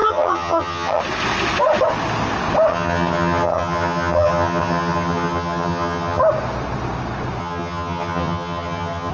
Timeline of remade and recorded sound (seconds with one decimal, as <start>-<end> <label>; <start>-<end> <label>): 0.0-1.0 remade; 1.0-2.7 recorded; 2.7-6.2 remade; 6.2-7.4 recorded; 7.4-9.1 remade